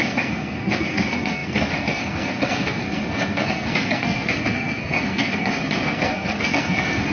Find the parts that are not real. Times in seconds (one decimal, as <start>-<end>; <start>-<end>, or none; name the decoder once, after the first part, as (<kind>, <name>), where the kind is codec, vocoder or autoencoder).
0.0-7.1 (codec, SNAC)